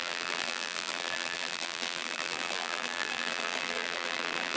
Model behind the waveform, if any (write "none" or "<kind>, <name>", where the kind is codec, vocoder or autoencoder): vocoder, BigVGAN v2